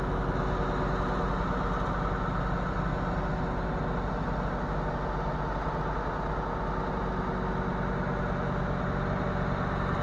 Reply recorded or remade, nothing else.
recorded